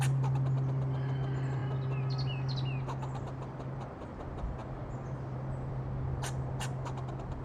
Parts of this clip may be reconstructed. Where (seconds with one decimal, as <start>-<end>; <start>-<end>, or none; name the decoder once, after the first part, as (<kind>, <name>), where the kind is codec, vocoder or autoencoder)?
0.0-1.6 (vocoder, BigVGAN v2); 3.2-7.4